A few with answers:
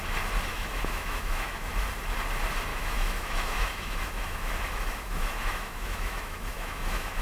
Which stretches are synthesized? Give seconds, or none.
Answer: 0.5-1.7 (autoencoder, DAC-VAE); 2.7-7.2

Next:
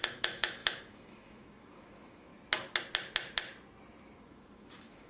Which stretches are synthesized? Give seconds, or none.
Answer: 0.0-2.3 (autoencoder, DAC-VAE); 4.2-5.1

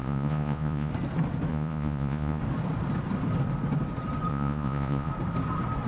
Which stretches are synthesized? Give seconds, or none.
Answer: 0.0-0.9 (vocoder, Vocos); 1.5-2.4; 4.3-5.1

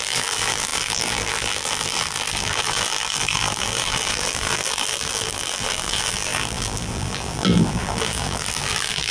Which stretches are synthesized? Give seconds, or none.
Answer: 0.0-9.1 (vocoder, BigVGAN v2)

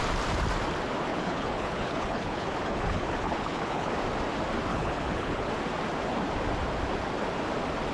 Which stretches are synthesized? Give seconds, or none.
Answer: 1.1-3.9 (codec, HILCodec); 4.7-5.5

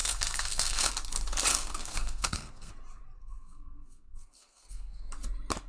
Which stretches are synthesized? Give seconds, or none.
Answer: 0.0-0.9 (codec, SNAC); 1.5-2.7; 3.2-5.1